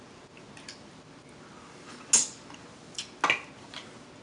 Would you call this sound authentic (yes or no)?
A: yes